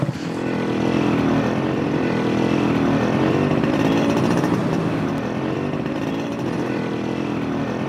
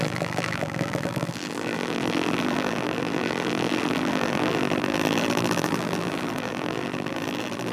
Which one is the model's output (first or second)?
second